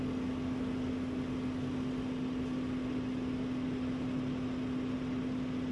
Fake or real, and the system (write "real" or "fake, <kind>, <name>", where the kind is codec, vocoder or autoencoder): real